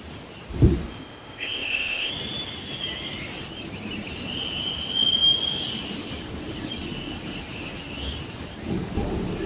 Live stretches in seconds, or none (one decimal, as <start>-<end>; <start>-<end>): 0.0-0.9; 2.1-9.5